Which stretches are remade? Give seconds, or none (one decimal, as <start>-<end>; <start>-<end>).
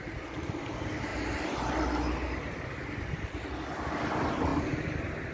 none